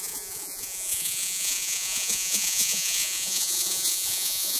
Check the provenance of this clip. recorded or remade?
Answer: remade